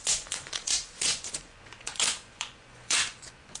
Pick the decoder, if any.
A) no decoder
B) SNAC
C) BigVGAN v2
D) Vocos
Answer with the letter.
D